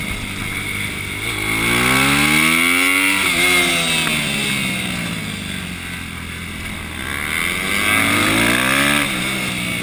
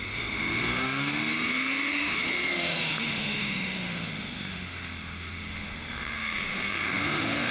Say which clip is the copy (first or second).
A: second